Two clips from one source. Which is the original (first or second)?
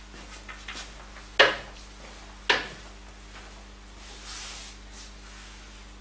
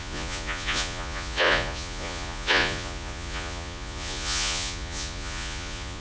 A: first